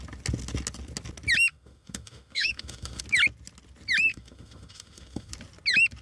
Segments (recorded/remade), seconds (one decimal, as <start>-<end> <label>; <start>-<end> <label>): 0.0-1.5 recorded; 1.5-3.0 remade; 3.0-4.1 recorded; 4.1-5.3 remade; 5.3-6.0 recorded